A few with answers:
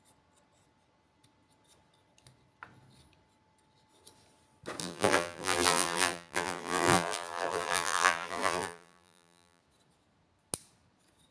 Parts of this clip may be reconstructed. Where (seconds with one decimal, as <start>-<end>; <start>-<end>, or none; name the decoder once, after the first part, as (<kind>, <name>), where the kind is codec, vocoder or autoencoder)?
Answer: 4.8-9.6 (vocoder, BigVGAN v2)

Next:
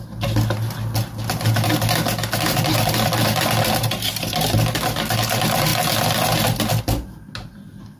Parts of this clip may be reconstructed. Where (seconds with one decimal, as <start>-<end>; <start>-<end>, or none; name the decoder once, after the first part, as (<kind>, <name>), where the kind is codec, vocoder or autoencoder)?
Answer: none

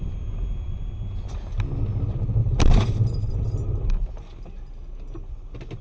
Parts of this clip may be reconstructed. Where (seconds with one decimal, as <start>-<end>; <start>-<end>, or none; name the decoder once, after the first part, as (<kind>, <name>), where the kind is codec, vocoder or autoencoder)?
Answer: 2.4-3.3 (vocoder, BigVGAN v2)

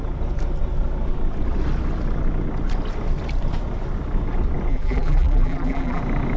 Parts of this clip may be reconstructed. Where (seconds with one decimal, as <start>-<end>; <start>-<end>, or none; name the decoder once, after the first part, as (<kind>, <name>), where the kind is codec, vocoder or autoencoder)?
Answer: 4.7-6.0 (vocoder, BigVGAN v2)